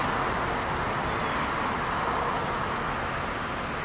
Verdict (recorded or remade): recorded